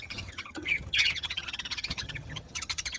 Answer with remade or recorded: remade